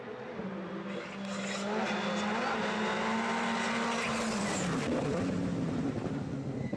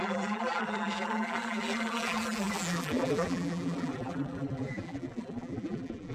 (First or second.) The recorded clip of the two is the first